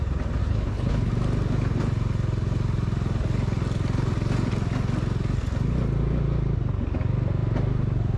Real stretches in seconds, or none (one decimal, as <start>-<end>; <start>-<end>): 0.0-0.4; 1.1-8.2